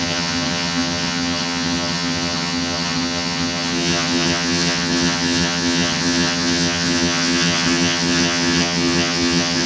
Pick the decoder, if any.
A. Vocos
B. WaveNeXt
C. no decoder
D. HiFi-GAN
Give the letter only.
D